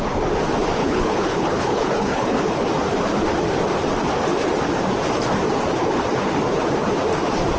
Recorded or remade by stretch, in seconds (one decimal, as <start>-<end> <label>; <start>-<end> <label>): 0.0-0.8 recorded; 0.8-2.4 remade; 2.4-7.6 recorded